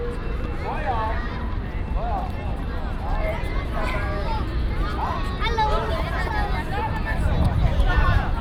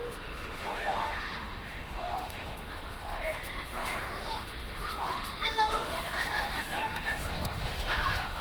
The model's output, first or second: second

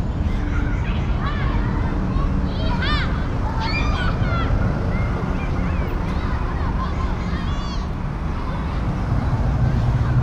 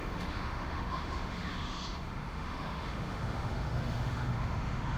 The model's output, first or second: second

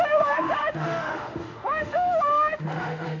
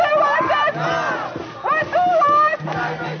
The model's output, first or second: first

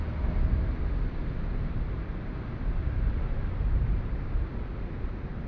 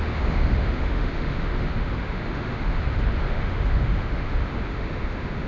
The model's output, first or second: second